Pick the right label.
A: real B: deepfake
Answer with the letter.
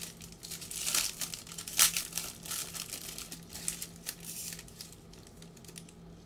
A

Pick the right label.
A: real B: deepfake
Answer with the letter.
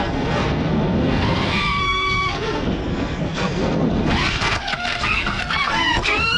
B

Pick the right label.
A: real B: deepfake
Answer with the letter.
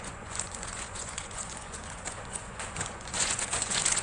B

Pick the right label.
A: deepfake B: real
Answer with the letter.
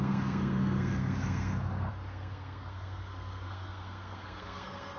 A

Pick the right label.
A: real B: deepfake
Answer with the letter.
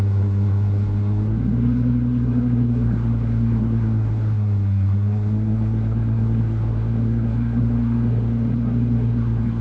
B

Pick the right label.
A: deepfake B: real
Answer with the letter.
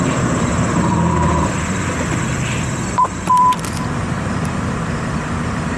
A